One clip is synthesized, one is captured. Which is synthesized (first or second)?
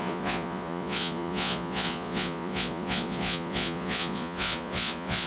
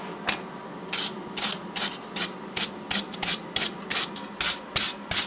first